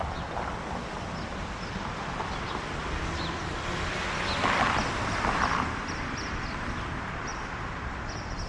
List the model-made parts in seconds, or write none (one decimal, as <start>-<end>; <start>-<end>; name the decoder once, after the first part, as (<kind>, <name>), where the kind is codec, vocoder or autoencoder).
none